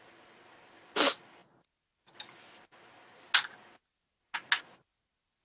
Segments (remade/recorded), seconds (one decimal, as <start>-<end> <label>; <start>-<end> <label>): 0.0-5.4 recorded